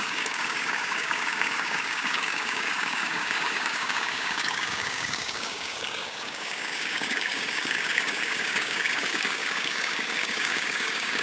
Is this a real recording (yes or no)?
no